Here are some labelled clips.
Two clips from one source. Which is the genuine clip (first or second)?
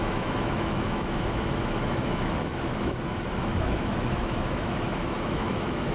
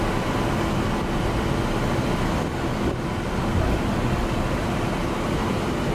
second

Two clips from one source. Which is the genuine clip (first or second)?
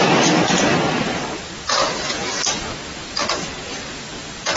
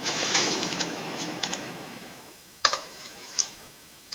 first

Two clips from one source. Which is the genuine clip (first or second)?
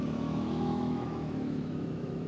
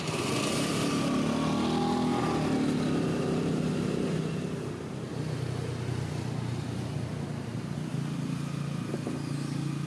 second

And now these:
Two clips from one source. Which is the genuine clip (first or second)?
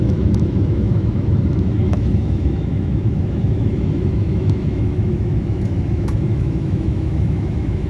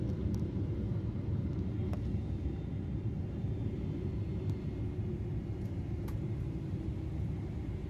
second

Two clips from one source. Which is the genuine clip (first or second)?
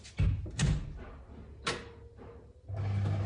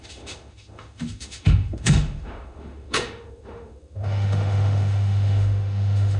first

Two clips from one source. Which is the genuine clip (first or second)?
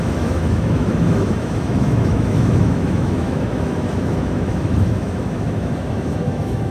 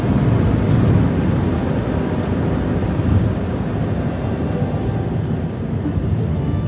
second